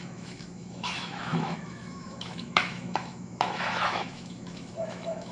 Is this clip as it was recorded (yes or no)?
no